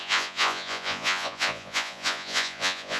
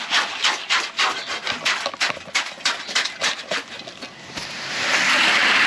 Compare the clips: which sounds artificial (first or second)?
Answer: first